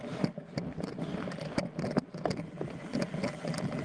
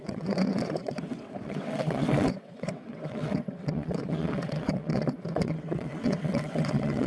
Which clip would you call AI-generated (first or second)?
second